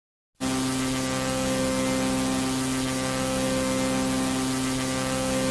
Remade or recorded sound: recorded